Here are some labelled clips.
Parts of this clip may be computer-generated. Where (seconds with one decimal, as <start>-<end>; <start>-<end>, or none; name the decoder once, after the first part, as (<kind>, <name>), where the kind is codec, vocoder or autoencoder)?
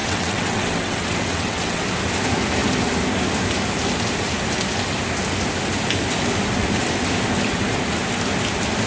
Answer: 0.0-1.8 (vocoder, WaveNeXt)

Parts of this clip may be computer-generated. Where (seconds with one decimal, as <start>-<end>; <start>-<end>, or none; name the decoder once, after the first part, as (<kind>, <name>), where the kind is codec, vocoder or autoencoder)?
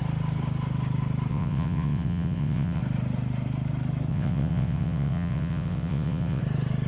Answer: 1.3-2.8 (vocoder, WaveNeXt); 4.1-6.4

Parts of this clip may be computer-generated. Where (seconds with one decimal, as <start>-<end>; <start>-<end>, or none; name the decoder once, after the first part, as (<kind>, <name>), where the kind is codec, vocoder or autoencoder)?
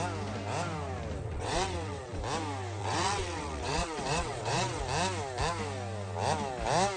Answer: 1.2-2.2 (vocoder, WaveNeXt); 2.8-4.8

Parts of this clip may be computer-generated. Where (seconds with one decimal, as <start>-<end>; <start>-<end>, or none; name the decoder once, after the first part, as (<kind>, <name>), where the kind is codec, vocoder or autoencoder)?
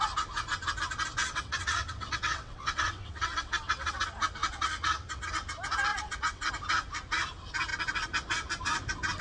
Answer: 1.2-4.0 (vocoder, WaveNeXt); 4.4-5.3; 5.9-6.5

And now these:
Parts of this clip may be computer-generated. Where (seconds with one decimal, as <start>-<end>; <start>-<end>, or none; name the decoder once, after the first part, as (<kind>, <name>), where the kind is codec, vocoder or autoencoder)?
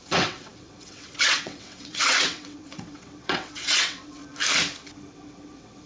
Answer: 0.0-4.2 (vocoder, WaveNeXt); 5.1-5.9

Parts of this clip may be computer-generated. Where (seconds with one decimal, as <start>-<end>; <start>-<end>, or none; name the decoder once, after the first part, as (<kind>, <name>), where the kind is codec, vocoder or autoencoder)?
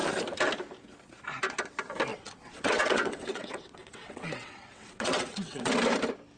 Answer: 2.1-5.7 (vocoder, WaveNeXt)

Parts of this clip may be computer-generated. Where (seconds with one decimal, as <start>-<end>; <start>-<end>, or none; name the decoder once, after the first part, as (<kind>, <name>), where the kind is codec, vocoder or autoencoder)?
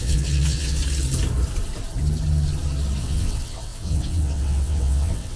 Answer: 0.0-0.8 (vocoder, WaveNeXt); 3.0-5.4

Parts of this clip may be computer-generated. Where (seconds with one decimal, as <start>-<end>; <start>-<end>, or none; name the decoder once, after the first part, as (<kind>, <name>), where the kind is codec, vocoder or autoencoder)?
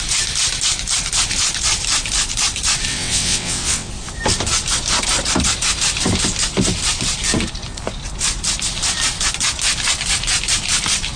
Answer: 2.9-3.9 (vocoder, WaveNeXt)